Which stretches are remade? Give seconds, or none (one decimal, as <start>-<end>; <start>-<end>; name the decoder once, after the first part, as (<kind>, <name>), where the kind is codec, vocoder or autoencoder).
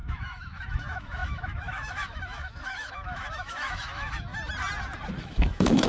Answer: 0.0-4.3 (autoencoder, DAC-VAE); 5.2-5.9